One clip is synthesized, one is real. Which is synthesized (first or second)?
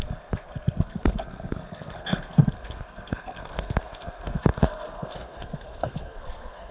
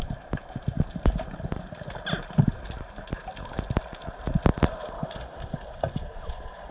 first